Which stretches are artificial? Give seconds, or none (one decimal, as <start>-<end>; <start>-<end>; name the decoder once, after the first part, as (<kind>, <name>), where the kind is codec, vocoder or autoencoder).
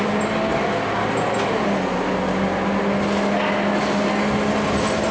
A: none